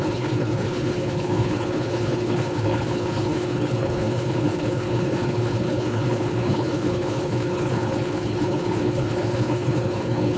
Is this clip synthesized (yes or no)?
yes